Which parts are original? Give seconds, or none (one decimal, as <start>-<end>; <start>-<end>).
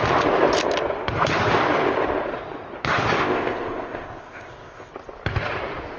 0.0-3.2; 4.9-6.0